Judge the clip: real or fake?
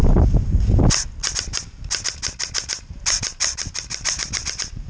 real